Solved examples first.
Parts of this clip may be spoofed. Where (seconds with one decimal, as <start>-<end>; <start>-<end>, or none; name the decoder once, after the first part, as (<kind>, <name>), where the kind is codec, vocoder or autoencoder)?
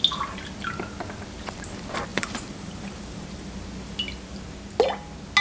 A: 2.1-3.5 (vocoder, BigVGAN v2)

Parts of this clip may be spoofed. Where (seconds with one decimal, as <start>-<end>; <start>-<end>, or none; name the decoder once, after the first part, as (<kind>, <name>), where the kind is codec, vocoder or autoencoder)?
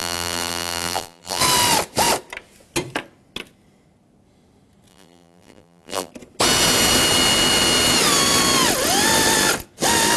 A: 0.0-1.4 (vocoder, BigVGAN v2); 4.9-6.1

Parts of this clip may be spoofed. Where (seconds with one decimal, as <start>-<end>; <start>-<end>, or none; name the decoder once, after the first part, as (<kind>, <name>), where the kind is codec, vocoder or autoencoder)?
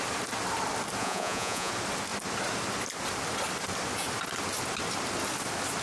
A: 1.0-1.7 (vocoder, Vocos)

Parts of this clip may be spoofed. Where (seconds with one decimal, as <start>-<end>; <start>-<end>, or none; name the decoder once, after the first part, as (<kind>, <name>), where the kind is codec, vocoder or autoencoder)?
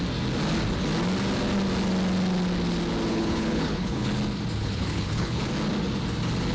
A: 3.1-4.1 (codec, HILCodec); 4.6-5.4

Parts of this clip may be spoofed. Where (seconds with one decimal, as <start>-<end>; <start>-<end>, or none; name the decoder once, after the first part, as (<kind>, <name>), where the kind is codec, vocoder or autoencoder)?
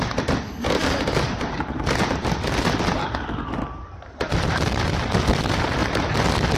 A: none